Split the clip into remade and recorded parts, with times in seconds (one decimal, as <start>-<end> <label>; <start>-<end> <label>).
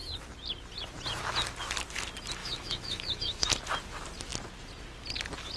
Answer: 0.0-2.4 recorded; 2.4-3.5 remade; 3.5-5.6 recorded